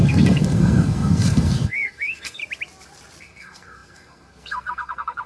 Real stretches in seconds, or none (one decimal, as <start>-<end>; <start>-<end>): 2.4-3.2